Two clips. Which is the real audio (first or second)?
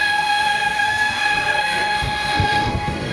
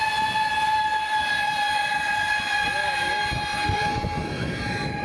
second